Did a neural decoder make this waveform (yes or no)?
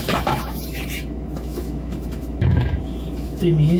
yes